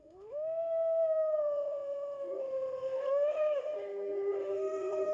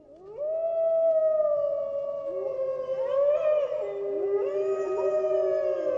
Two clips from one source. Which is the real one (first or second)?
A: second